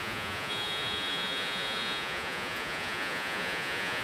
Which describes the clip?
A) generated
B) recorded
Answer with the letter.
A